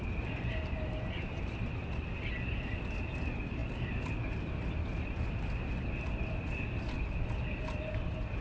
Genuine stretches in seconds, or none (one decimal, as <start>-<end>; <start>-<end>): 0.0-8.4